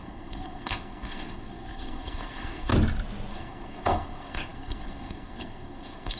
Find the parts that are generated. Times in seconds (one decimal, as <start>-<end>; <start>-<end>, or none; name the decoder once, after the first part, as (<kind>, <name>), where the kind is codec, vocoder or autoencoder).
0.0-2.7 (codec, SNAC); 3.3-6.2